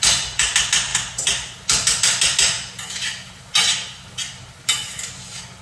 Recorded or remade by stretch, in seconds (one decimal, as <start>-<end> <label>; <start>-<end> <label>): 0.0-5.6 recorded